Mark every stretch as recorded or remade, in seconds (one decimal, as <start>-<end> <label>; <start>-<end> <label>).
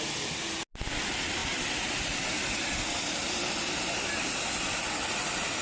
0.0-5.6 recorded